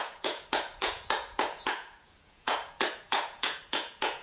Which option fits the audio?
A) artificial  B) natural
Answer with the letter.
A